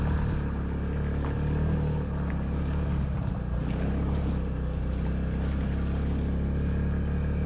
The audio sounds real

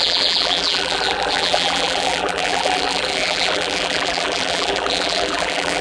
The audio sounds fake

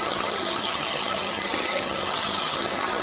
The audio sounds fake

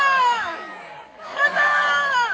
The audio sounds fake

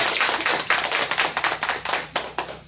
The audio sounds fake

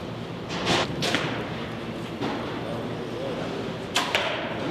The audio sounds real